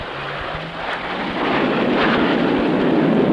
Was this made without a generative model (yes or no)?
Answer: yes